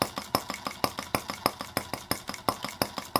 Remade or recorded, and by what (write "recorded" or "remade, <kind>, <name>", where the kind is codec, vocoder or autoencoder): recorded